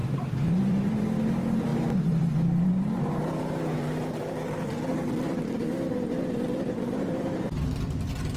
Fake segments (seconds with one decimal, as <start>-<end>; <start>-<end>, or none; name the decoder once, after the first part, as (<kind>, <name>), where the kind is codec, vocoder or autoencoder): 0.0-0.9 (vocoder, BigVGAN v2); 4.9-5.4